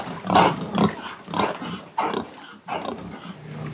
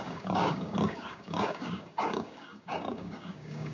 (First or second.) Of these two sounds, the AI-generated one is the second